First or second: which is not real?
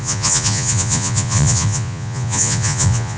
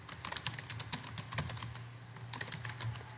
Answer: first